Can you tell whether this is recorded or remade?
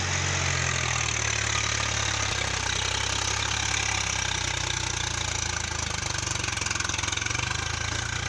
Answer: recorded